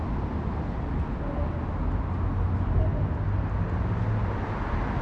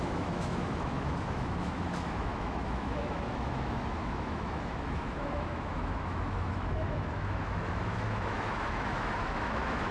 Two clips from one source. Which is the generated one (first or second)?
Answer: second